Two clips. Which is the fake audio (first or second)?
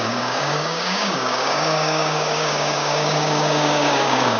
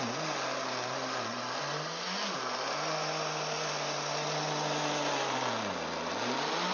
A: first